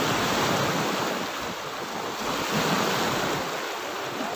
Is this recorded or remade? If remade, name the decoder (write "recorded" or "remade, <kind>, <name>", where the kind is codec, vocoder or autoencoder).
recorded